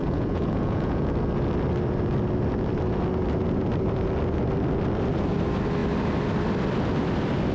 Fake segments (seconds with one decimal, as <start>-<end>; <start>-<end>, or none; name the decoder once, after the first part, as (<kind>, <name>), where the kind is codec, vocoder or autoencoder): 0.0-1.1 (vocoder, Vocos)